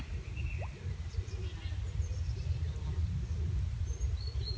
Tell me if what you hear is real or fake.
real